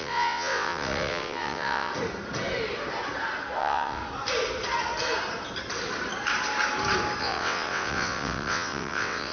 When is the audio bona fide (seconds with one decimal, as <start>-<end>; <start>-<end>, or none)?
1.9-3.6; 4.0-7.2